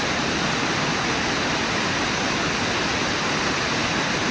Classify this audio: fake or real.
real